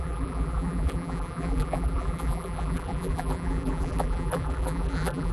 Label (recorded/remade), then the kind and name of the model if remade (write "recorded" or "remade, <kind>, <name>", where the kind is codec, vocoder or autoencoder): remade, vocoder, BigVGAN v2